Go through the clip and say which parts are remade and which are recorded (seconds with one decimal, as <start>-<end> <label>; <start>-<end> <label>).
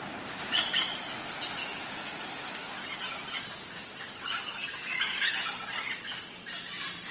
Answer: 0.0-1.6 recorded; 1.6-2.7 remade; 2.7-4.8 recorded; 4.8-5.3 remade; 5.3-7.1 recorded